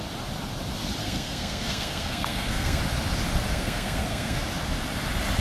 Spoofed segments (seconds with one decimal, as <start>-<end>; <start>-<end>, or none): 1.0-2.8; 3.5-4.4